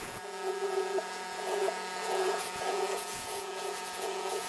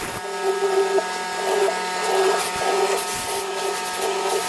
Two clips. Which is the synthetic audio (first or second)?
first